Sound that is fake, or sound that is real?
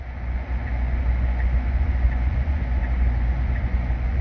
fake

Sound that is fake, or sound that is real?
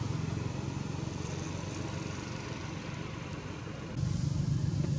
real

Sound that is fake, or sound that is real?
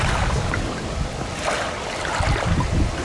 real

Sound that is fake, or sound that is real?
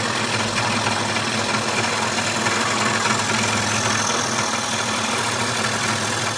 real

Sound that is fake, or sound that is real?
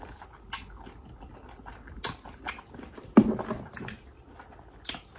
real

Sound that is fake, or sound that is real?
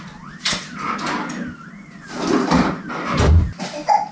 real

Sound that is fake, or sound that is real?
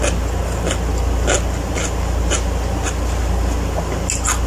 real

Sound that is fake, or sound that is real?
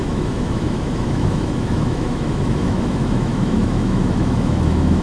fake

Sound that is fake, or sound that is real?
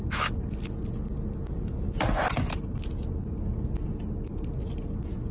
real